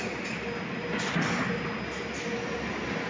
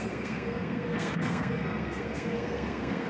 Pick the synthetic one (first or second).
second